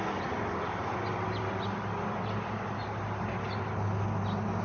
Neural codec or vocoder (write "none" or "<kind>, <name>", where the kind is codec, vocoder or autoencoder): none